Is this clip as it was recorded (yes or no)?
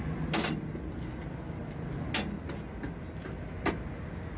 yes